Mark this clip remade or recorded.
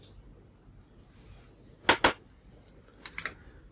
recorded